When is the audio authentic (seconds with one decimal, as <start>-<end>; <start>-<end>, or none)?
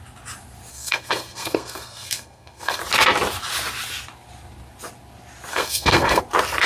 0.0-0.7; 2.8-5.5; 6.2-6.7